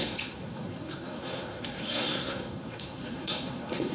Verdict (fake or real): fake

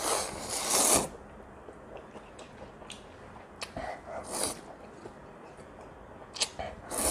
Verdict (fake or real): real